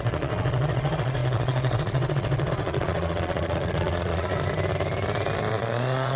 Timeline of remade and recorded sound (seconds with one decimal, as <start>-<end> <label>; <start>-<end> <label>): 0.0-4.3 remade; 4.3-5.5 recorded; 5.5-6.2 remade